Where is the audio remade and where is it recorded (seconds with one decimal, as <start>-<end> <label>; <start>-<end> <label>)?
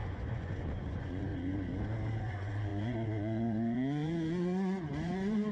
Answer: 0.0-1.3 remade; 1.3-2.2 recorded; 2.2-5.5 remade